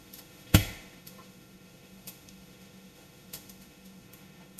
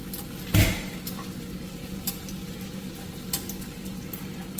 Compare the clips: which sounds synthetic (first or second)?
first